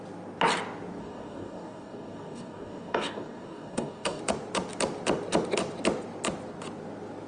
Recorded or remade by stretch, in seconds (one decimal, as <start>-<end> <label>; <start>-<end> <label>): 0.0-1.0 recorded; 1.0-4.2 remade; 4.2-7.3 recorded